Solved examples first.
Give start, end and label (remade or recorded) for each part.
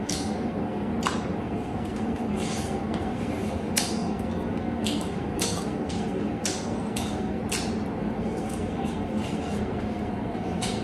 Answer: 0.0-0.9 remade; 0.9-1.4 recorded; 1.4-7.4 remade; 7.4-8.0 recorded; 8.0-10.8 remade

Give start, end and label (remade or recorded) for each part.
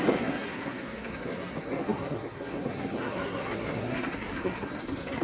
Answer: 0.0-5.2 remade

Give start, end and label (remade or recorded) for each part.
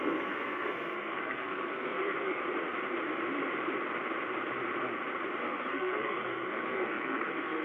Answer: 0.0-2.4 remade; 2.4-5.4 recorded; 5.4-7.6 remade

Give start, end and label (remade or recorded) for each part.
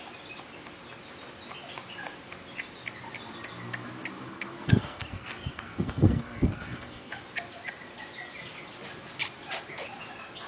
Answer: 0.0-4.3 recorded; 4.3-7.1 remade; 7.1-10.5 recorded